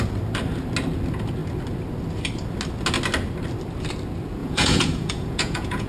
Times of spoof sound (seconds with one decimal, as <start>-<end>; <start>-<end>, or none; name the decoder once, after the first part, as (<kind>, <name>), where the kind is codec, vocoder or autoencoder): 4.4-5.9 (vocoder, Vocos)